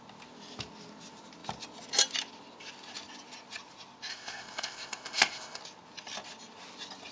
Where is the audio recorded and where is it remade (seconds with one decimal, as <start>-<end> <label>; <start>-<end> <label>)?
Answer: 0.0-4.1 recorded; 4.1-5.6 remade; 5.6-7.1 recorded